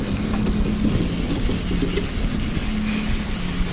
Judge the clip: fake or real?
real